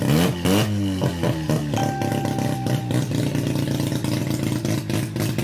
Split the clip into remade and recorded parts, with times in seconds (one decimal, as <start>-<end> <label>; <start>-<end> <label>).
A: 0.0-5.4 recorded